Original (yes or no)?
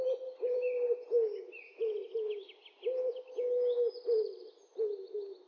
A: yes